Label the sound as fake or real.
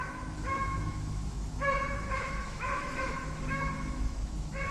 fake